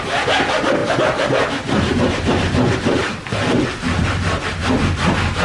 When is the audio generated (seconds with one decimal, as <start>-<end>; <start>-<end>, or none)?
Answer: none